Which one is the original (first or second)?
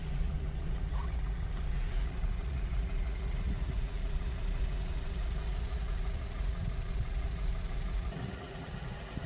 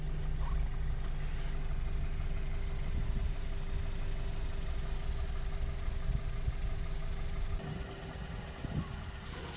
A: second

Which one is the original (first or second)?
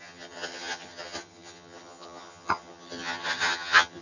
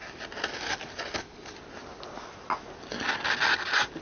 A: second